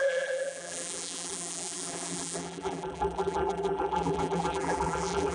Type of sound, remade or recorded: remade